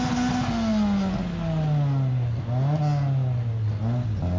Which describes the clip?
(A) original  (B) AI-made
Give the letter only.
A